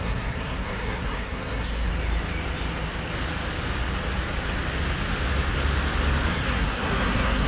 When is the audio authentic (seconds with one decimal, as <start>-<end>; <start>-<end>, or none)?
1.9-6.3